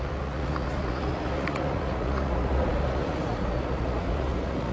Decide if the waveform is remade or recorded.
remade